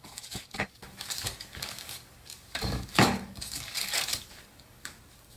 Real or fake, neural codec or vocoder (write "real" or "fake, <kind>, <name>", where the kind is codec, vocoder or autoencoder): fake, codec, DAC